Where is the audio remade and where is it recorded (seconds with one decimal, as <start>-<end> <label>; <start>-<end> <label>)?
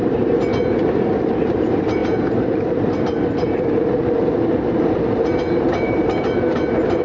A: 0.0-7.0 remade